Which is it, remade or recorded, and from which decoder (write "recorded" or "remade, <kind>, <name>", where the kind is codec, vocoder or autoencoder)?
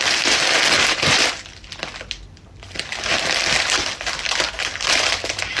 remade, vocoder, BigVGAN v2